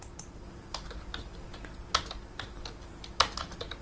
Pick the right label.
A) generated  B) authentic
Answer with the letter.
B